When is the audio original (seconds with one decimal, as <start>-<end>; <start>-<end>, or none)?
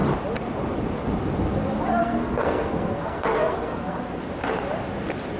0.0-2.0; 4.2-5.4